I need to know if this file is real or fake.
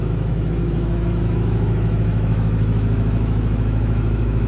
fake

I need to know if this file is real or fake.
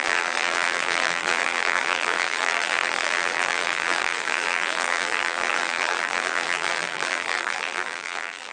fake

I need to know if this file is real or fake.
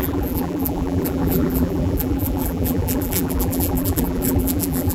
fake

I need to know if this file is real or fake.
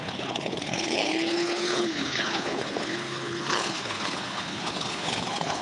fake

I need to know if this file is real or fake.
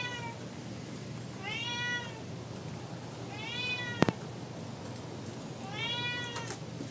real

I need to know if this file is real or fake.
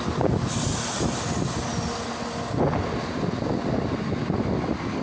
real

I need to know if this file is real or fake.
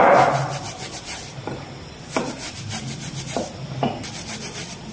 real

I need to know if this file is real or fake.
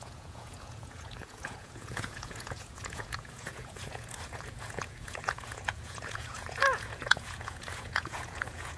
fake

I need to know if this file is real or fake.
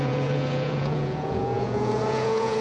fake